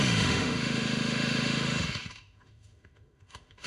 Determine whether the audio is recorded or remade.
remade